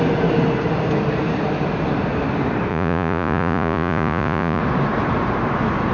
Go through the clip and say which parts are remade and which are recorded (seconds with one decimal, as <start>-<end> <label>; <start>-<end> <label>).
0.0-2.7 recorded; 2.7-4.6 remade; 4.6-5.9 recorded